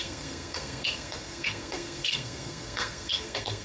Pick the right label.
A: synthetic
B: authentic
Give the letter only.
A